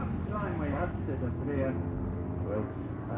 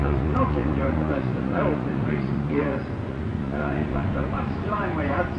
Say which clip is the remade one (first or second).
second